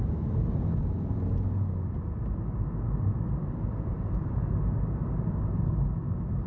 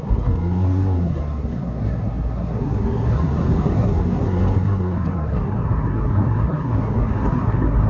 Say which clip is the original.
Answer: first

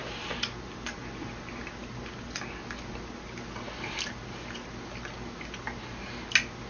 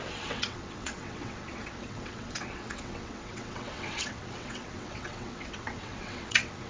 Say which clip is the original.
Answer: first